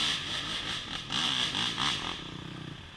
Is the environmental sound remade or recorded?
recorded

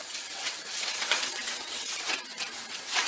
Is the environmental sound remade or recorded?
remade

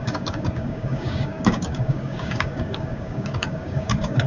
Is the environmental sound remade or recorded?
remade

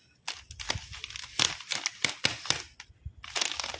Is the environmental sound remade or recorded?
recorded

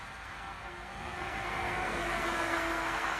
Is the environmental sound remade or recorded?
remade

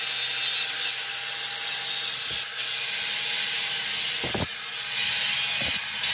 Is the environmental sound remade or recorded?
recorded